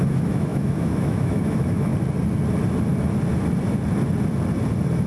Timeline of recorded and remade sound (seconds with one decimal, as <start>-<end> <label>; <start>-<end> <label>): 0.0-1.9 remade; 1.9-5.1 recorded